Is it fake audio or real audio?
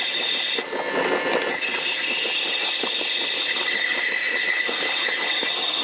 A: real